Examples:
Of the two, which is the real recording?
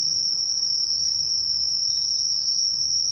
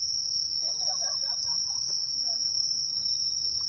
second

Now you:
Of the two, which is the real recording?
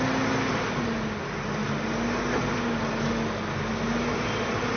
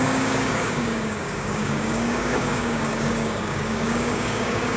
first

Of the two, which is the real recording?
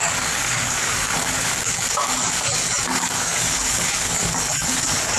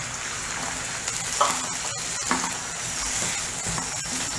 second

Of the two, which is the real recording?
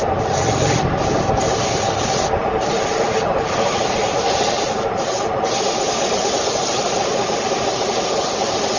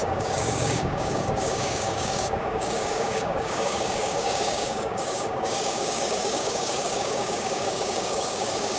first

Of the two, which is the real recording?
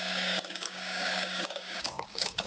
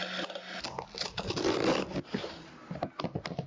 second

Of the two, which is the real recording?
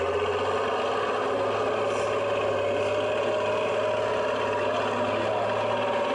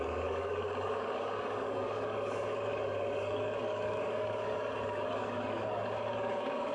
first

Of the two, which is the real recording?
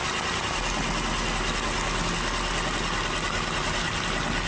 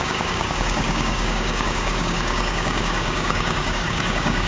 first